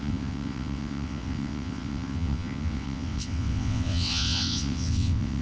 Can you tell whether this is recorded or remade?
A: remade